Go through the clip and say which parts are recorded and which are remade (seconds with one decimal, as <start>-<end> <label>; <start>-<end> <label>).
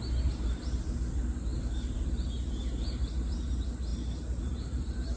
0.0-1.5 recorded; 1.5-2.1 remade; 2.1-3.9 recorded; 3.9-5.2 remade